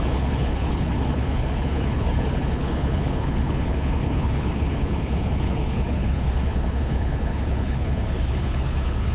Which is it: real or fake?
fake